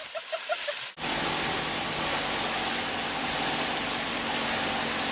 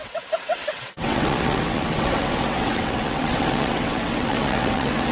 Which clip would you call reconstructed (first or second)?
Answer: second